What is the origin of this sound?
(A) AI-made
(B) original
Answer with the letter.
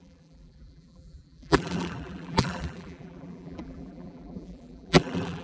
A